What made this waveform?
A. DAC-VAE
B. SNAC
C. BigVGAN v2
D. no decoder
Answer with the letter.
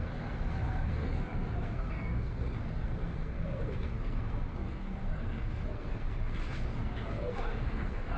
B